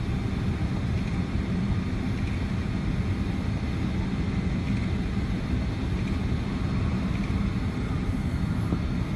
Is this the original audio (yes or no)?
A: yes